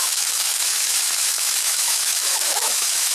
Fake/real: fake